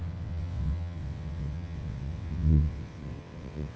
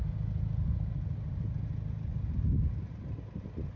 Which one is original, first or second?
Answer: second